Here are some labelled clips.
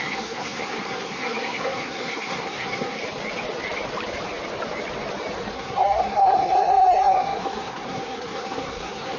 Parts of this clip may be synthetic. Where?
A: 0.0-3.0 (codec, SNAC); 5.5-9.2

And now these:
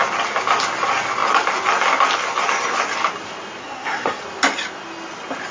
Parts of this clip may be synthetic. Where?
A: 3.6-4.2 (codec, SNAC)

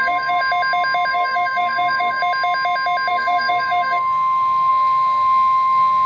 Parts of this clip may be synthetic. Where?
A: 0.0-0.4 (codec, SNAC); 1.1-2.2; 3.1-6.1

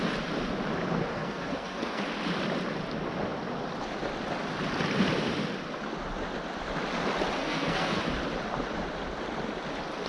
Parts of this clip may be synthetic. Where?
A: 1.1-2.0 (codec, SNAC); 7.4-8.0

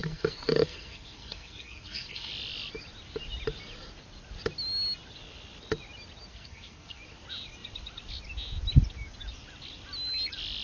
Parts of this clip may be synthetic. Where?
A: 0.0-2.3 (codec, SNAC); 6.3-7.0

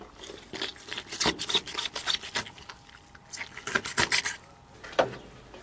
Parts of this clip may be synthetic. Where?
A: none

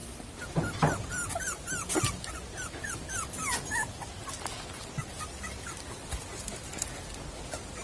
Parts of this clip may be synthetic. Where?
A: none

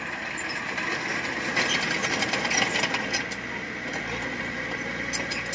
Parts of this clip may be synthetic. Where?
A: none